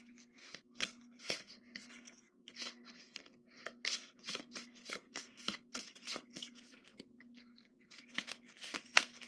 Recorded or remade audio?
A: remade